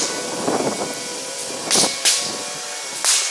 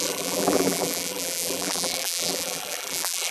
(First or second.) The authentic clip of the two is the first